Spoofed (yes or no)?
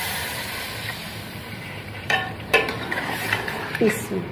yes